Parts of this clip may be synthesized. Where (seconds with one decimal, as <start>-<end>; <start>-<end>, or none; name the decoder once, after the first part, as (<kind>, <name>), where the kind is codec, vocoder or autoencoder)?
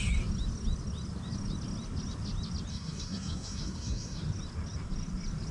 2.7-4.2 (codec, SNAC)